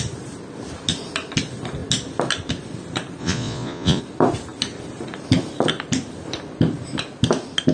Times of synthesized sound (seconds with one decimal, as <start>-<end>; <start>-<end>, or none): 3.2-4.0